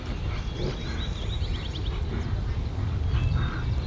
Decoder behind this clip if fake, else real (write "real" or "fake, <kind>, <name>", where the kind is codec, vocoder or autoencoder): real